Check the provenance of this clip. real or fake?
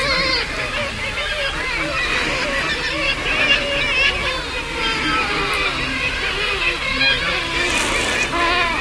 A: real